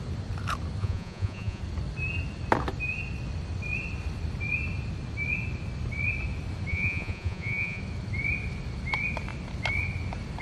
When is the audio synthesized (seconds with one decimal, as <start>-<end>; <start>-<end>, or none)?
0.8-1.6; 6.7-7.8